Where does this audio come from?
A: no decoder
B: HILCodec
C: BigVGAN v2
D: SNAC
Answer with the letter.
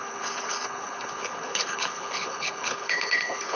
B